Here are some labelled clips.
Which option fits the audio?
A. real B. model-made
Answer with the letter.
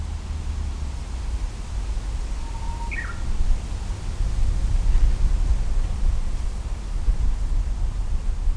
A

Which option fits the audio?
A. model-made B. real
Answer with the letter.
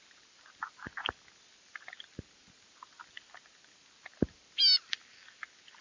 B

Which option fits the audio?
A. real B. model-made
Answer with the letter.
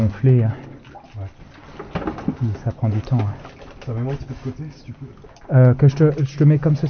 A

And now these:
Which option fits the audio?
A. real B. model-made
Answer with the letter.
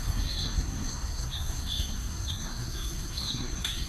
B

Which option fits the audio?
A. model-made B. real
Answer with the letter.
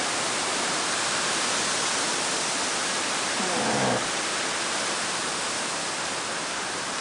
B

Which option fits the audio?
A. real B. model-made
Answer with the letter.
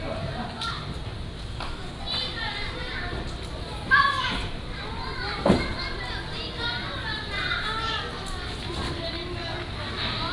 A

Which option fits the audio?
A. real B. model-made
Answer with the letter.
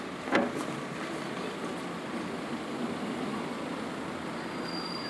A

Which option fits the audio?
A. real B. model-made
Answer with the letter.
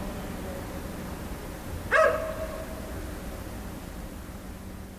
A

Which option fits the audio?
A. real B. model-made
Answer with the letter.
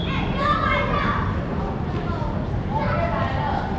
A